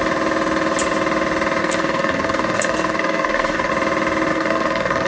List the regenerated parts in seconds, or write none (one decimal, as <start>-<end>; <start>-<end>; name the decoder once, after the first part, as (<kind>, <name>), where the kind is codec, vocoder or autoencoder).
1.6-3.7 (codec, SNAC); 4.3-5.1

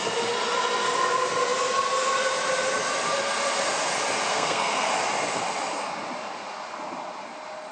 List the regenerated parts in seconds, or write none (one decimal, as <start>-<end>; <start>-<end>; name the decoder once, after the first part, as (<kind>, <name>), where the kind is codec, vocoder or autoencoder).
4.3-4.9 (codec, SNAC)

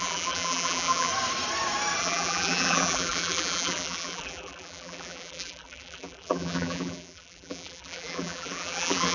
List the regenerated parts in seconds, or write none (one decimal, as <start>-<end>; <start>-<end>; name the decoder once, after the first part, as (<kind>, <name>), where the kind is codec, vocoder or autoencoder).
0.0-1.1 (vocoder, BigVGAN v2); 2.0-9.1